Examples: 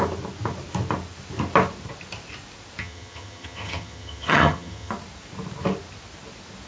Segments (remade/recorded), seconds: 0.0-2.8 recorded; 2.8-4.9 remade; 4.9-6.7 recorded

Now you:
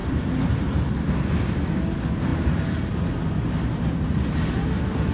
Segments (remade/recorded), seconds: 0.0-0.8 remade; 0.8-5.1 recorded

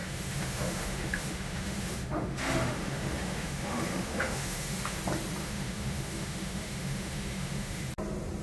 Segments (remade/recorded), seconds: 0.0-5.0 remade; 5.0-5.4 recorded; 5.4-7.9 remade; 7.9-8.4 recorded

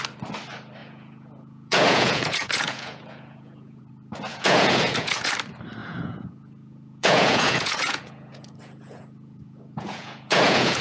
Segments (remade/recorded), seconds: 0.0-0.8 recorded; 0.8-3.8 remade; 3.8-4.3 recorded; 4.3-5.3 remade; 5.3-5.8 recorded; 5.8-10.8 remade

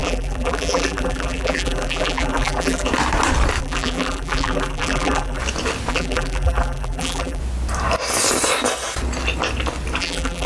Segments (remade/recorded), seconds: 0.0-2.9 remade; 2.9-3.6 recorded; 3.6-5.4 remade; 5.4-5.9 recorded; 5.9-7.4 remade; 7.4-10.0 recorded; 10.0-10.5 remade

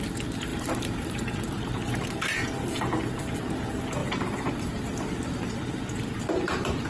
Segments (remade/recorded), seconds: 0.0-0.5 recorded; 0.5-3.1 remade; 3.1-4.0 recorded; 4.0-6.9 remade

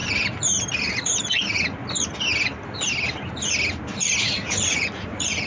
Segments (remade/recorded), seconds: 0.0-0.9 recorded; 0.9-1.8 remade; 1.8-4.2 recorded; 4.2-5.5 remade